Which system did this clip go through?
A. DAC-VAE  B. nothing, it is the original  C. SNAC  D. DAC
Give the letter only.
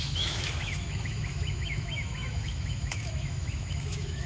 A